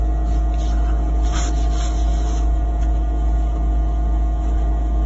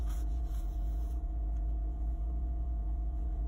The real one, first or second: first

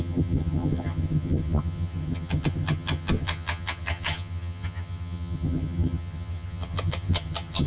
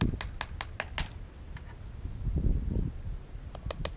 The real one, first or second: second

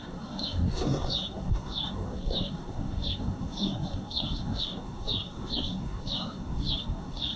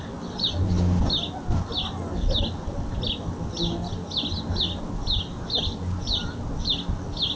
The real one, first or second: second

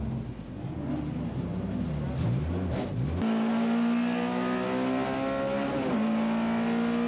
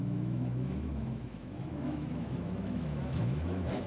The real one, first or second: first